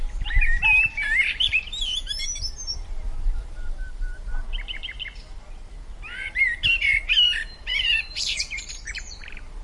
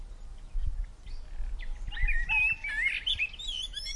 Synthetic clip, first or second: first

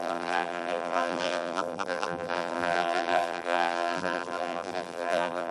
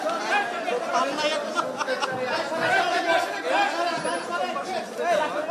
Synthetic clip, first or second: first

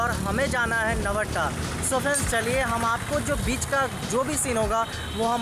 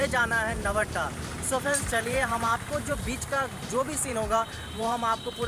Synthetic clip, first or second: second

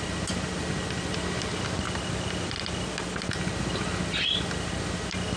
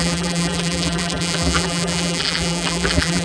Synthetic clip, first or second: second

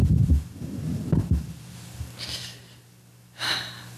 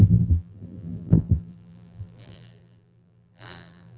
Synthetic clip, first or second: second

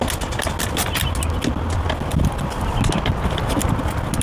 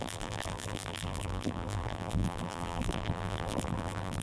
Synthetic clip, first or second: second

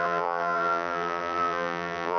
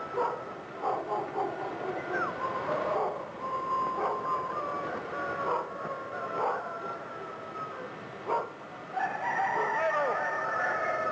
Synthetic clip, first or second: first